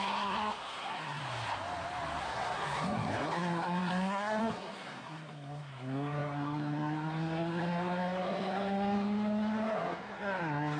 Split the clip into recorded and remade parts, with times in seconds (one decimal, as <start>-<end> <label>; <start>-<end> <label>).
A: 0.0-1.2 remade; 1.2-2.2 recorded; 2.2-10.8 remade